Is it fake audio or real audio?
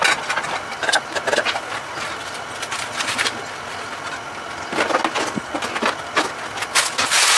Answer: real